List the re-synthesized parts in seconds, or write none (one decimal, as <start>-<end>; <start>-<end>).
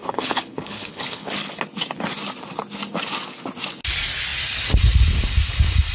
0.0-1.3